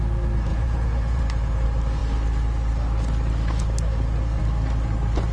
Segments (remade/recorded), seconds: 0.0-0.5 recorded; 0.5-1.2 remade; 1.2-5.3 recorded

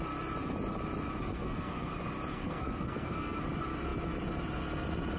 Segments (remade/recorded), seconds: 0.0-1.3 recorded; 1.3-1.9 remade; 1.9-2.3 recorded; 2.3-3.4 remade; 3.4-5.2 recorded

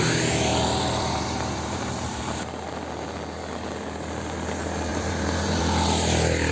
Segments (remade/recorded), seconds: 0.0-0.5 recorded; 0.5-2.2 remade; 2.2-4.9 recorded; 4.9-5.6 remade; 5.6-6.5 recorded

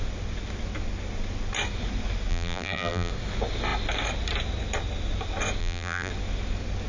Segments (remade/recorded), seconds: 0.0-2.3 recorded; 2.3-3.1 remade; 3.1-5.6 recorded; 5.6-6.1 remade; 6.1-6.9 recorded